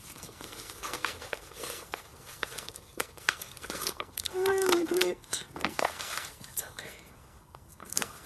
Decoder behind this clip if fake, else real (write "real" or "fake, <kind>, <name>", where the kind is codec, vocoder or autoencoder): fake, codec, SNAC